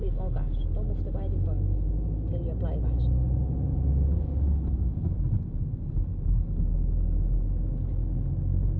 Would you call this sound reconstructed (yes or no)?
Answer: no